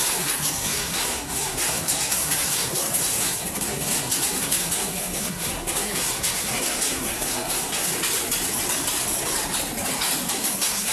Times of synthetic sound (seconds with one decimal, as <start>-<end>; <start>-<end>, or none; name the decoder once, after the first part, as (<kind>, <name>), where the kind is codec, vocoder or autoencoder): 0.0-7.9 (codec, SNAC); 10.3-10.9